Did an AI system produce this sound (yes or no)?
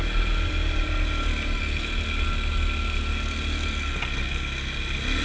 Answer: no